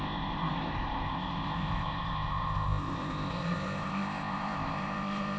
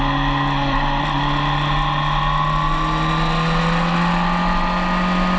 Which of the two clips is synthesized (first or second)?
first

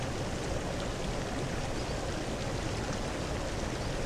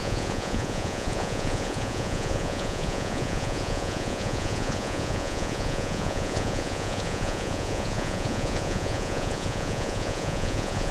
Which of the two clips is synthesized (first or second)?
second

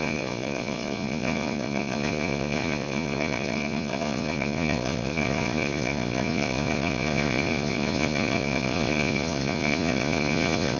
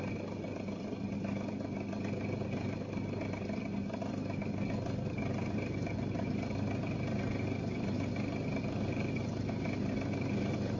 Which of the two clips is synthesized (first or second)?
first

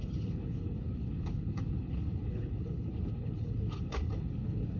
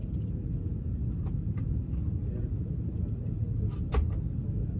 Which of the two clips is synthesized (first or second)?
first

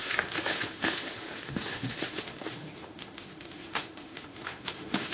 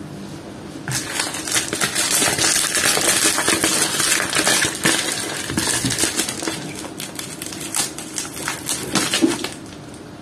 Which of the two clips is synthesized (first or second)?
first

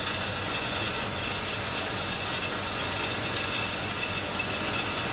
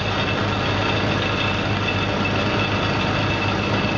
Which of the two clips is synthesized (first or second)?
first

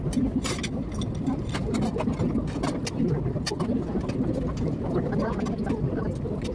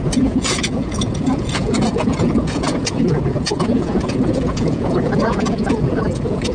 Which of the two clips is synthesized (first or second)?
second